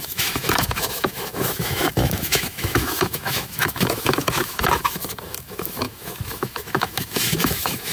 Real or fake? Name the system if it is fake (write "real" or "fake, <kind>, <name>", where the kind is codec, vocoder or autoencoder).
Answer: fake, autoencoder, DAC-VAE